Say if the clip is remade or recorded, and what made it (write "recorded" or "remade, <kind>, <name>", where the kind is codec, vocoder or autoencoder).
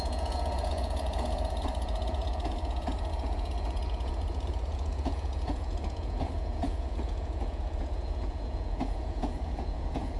remade, vocoder, Vocos